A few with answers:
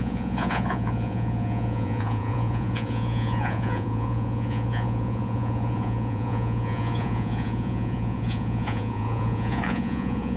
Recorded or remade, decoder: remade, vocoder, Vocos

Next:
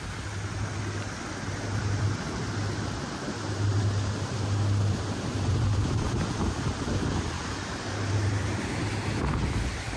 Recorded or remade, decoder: recorded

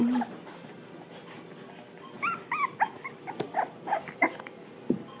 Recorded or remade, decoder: recorded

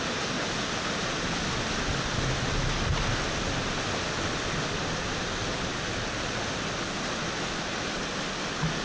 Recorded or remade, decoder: recorded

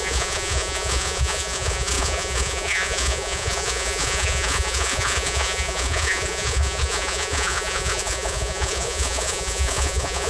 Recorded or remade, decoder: remade, vocoder, Vocos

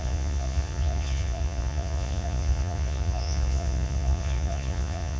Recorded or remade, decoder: remade, vocoder, Vocos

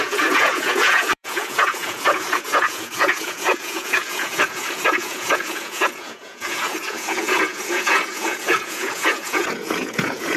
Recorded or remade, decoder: remade, vocoder, Vocos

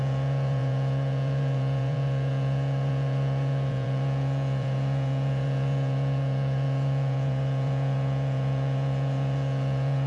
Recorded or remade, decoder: remade, vocoder, Vocos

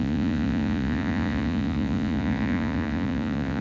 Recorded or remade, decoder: remade, vocoder, Vocos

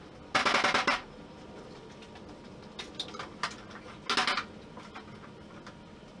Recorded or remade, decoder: recorded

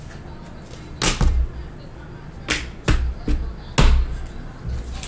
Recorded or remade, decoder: recorded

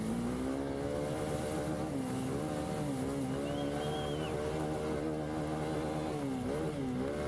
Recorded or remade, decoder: recorded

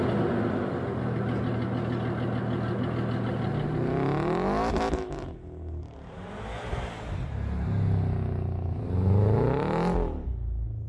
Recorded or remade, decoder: recorded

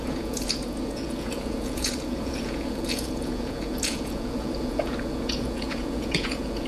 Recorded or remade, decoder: remade, vocoder, Vocos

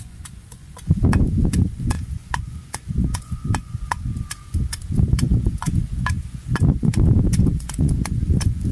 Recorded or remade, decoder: remade, vocoder, Vocos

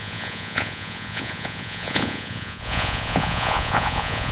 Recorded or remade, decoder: remade, vocoder, Vocos